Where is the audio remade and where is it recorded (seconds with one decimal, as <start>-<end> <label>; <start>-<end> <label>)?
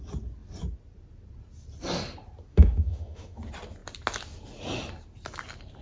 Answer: 0.0-2.5 recorded; 2.5-3.4 remade; 3.4-5.8 recorded